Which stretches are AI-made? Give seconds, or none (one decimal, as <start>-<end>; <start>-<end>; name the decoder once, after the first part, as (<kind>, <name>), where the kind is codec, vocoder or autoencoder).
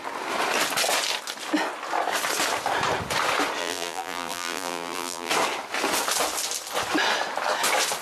3.6-5.3 (vocoder, BigVGAN v2)